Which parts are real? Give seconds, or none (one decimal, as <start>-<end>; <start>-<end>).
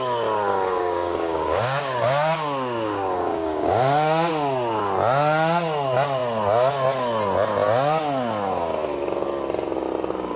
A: 0.0-0.5; 4.3-10.4